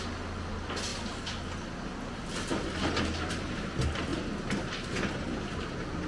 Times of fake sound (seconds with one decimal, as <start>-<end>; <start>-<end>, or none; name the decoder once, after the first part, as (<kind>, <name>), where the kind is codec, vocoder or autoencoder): none